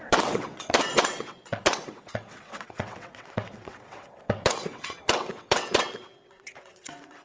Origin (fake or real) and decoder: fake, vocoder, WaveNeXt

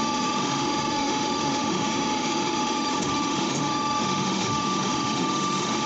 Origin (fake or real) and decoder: fake, autoencoder, DAC-VAE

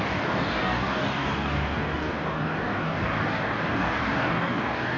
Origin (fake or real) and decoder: fake, codec, DAC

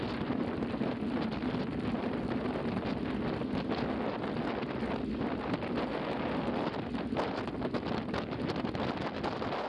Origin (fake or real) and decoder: real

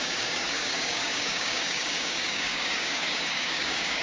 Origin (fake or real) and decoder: fake, codec, DAC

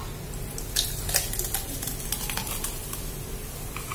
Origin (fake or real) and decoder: real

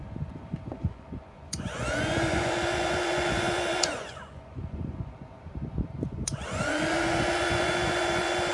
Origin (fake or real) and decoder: fake, vocoder, Vocos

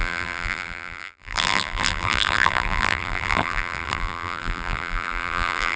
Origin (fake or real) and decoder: fake, vocoder, BigVGAN v2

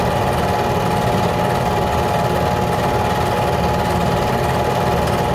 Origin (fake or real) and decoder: real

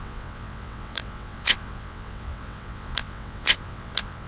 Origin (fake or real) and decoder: fake, vocoder, WaveNeXt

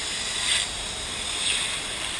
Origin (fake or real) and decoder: fake, vocoder, BigVGAN v2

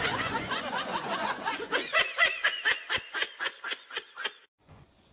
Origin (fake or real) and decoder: fake, vocoder, Vocos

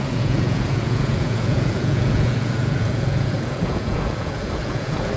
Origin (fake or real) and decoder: fake, vocoder, Vocos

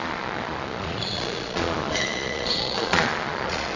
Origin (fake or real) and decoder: fake, vocoder, Vocos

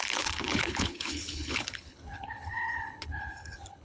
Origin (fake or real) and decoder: fake, codec, HILCodec